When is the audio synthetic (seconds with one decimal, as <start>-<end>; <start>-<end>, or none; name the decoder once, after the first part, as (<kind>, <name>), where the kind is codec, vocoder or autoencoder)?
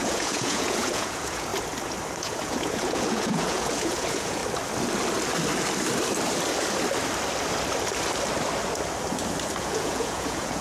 0.0-1.5 (vocoder, Vocos); 2.2-4.4; 9.6-10.6